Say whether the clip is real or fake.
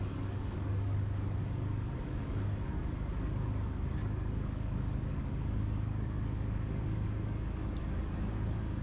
fake